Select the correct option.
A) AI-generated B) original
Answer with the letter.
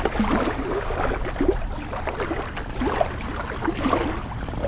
B